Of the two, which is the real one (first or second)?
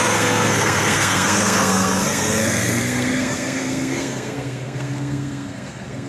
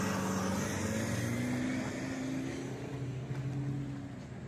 second